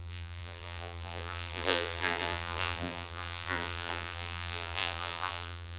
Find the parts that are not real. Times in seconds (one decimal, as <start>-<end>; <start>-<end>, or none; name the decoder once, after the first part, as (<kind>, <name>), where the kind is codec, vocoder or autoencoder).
0.0-5.8 (vocoder, BigVGAN v2)